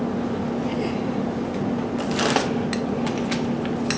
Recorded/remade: recorded